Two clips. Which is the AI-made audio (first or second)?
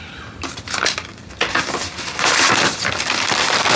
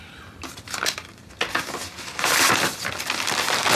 first